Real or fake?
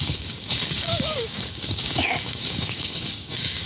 fake